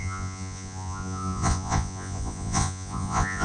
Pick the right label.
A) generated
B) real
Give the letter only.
A